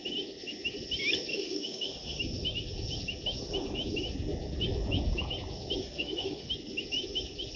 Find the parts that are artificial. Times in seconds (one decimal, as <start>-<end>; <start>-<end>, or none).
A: 1.3-2.2; 5.8-6.5